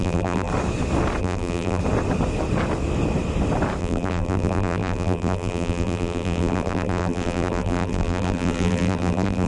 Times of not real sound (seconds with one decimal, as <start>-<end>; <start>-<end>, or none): 0.0-0.5; 1.2-1.8; 3.8-9.5